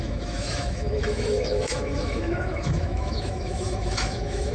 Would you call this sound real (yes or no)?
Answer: no